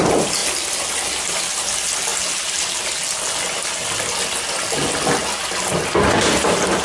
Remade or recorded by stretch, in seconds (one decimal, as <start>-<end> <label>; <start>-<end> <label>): 0.0-0.4 recorded; 0.4-1.0 remade; 1.0-6.8 recorded

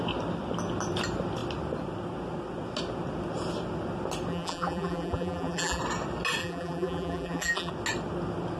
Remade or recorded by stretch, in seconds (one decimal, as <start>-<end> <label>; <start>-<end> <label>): 0.0-4.3 recorded; 4.3-5.8 remade; 5.8-6.4 recorded; 6.4-7.7 remade; 7.7-8.6 recorded